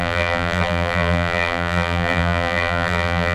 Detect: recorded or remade remade